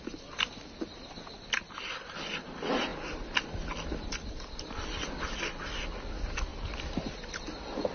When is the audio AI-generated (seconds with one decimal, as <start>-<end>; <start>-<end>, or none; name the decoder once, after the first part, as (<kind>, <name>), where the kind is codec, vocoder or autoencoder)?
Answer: none